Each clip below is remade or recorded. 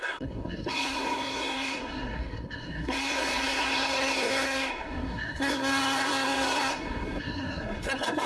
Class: remade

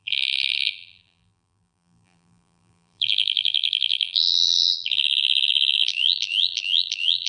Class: remade